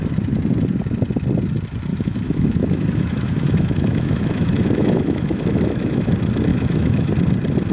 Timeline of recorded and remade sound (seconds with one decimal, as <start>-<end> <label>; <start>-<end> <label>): 0.0-1.9 recorded; 1.9-6.1 remade; 6.1-6.5 recorded; 6.5-7.1 remade; 7.1-7.7 recorded